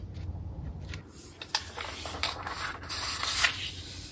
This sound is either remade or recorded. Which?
recorded